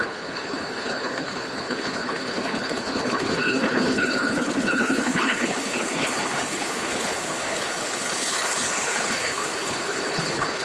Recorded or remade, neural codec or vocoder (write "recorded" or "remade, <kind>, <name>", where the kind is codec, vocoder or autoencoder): remade, codec, HILCodec